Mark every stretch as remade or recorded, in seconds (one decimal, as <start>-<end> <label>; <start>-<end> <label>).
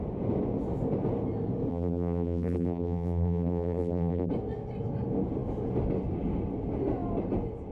0.0-1.7 recorded; 1.7-4.3 remade; 4.3-7.7 recorded